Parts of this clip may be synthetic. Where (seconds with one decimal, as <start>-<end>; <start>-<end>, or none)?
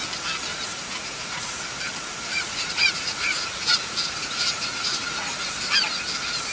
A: 0.5-1.6; 2.3-5.3